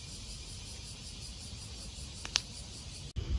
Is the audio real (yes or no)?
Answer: yes